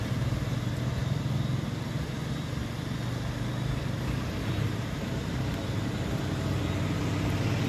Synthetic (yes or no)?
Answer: no